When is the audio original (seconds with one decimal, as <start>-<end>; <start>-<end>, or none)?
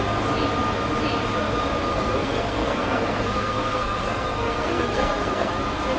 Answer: 0.0-1.9; 5.5-6.0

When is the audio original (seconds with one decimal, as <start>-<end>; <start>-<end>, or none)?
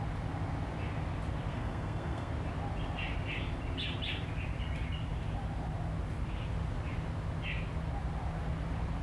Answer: 0.0-1.5; 2.3-9.0